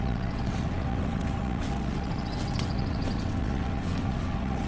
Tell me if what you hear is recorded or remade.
remade